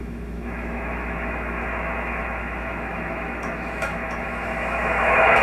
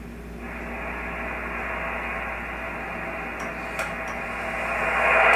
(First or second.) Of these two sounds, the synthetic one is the first